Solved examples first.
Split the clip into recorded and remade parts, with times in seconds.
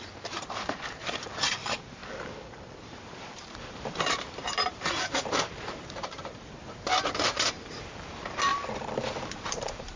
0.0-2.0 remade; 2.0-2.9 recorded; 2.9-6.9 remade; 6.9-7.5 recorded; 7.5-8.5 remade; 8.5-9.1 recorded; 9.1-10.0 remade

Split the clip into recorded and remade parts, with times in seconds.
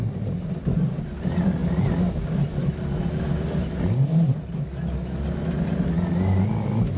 0.0-7.0 recorded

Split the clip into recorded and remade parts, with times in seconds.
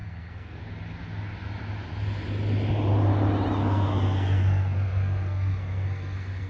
0.0-0.6 remade; 0.6-3.6 recorded; 3.6-6.5 remade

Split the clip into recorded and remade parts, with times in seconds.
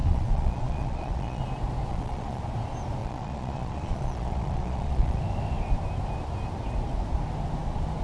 0.0-1.4 remade; 1.4-1.9 recorded; 1.9-2.4 remade; 2.4-3.0 recorded; 3.0-5.2 remade; 5.2-8.0 recorded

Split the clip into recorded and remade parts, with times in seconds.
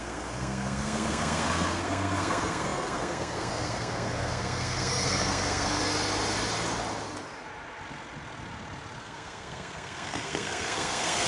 0.0-5.8 remade; 5.8-9.0 recorded; 9.0-11.3 remade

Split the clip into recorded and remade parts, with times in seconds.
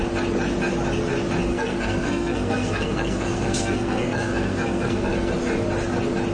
0.0-1.5 recorded; 1.5-5.3 remade; 5.3-6.3 recorded